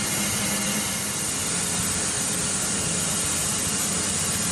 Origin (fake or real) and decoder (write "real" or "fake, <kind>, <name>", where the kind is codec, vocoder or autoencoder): real